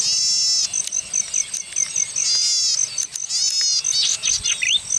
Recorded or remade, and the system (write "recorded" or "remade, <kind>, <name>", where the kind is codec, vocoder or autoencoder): recorded